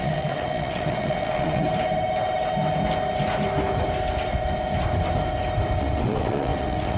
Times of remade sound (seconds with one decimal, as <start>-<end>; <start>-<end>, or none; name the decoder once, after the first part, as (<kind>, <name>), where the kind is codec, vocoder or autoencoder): 0.0-1.6 (vocoder, WaveNeXt); 5.8-7.0